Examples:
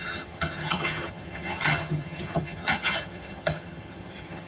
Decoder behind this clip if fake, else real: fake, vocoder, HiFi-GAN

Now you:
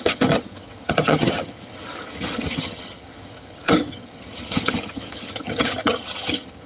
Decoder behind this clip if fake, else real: fake, vocoder, HiFi-GAN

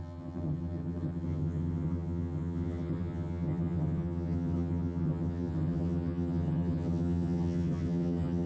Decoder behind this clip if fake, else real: fake, vocoder, HiFi-GAN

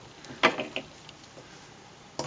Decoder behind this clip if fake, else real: real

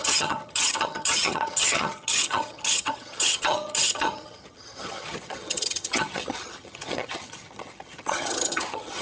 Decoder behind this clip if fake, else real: fake, vocoder, HiFi-GAN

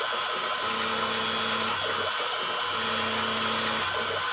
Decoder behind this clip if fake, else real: real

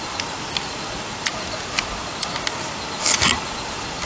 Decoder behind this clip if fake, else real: real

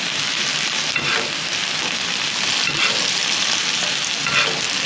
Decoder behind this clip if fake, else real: real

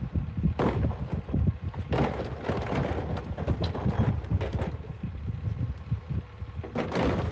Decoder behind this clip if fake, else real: real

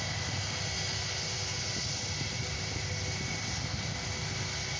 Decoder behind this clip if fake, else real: real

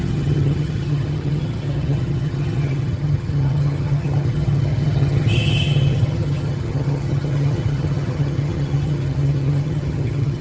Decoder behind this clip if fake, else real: fake, vocoder, HiFi-GAN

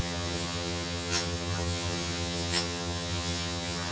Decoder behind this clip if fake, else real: fake, vocoder, HiFi-GAN